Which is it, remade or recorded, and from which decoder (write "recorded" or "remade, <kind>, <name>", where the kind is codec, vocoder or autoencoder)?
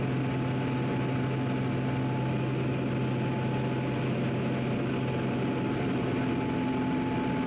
recorded